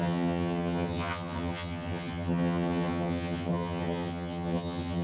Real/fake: fake